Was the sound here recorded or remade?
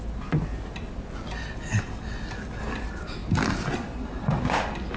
recorded